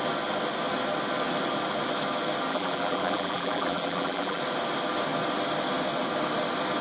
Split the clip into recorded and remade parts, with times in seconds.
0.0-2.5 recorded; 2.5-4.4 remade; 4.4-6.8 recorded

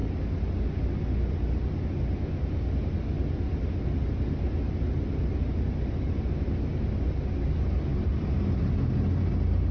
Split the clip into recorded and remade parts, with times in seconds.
0.0-9.7 recorded

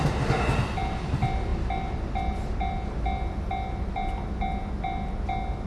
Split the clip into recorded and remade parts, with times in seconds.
0.0-5.7 recorded

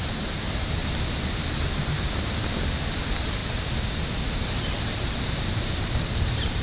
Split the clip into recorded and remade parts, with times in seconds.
0.0-0.8 remade; 0.8-1.5 recorded; 1.5-3.4 remade; 3.4-4.3 recorded; 4.3-6.6 remade

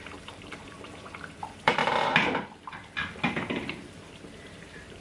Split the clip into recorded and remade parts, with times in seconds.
0.0-1.8 remade; 1.8-4.4 recorded; 4.4-5.0 remade